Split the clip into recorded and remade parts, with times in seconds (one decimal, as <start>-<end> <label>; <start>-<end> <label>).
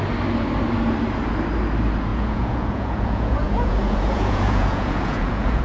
0.0-2.1 recorded; 2.1-5.6 remade